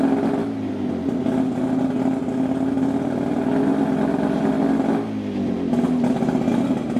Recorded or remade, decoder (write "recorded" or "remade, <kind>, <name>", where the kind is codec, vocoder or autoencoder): recorded